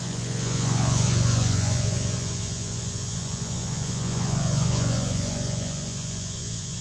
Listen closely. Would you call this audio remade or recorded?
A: remade